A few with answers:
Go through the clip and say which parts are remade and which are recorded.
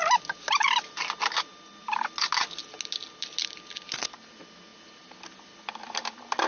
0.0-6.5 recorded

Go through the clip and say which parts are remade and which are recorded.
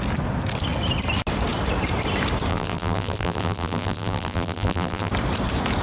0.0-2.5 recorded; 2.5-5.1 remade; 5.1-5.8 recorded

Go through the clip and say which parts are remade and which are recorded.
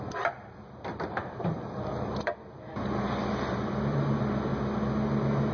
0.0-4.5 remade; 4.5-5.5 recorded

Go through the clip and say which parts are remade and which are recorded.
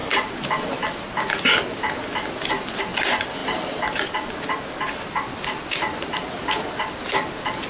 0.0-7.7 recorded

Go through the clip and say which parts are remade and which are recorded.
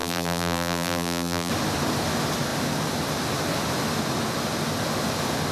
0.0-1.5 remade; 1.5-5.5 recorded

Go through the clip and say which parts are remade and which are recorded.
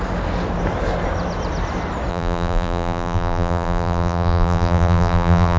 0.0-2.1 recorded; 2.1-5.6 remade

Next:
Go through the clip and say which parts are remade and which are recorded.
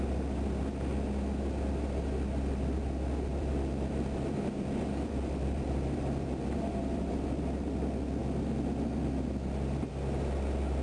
0.0-3.3 recorded; 3.3-7.1 remade; 7.1-10.8 recorded